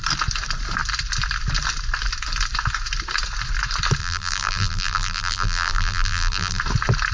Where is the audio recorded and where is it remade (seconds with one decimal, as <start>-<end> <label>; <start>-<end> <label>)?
0.0-4.0 recorded; 4.0-6.6 remade; 6.6-7.1 recorded